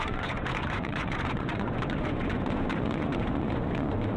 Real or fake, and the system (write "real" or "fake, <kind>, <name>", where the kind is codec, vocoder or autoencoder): fake, vocoder, Vocos